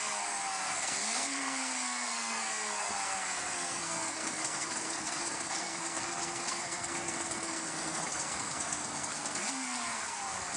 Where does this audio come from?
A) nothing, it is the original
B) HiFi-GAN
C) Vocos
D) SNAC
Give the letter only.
D